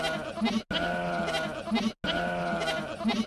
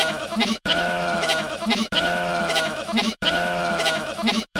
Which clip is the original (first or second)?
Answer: first